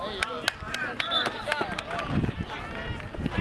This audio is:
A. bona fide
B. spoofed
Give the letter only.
A